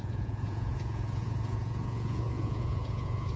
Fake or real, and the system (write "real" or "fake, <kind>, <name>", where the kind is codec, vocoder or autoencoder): fake, vocoder, Vocos